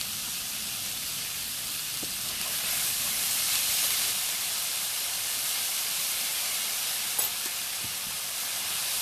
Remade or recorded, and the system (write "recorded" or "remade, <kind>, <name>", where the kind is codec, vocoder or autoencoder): recorded